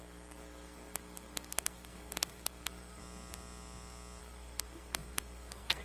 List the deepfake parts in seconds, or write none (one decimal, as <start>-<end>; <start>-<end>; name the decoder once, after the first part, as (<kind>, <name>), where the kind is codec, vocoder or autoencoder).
0.0-3.0 (codec, SNAC); 4.2-5.8